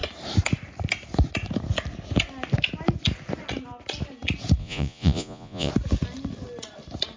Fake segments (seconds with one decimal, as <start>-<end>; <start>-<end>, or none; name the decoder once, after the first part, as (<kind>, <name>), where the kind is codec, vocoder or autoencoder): 4.6-5.7 (vocoder, Vocos)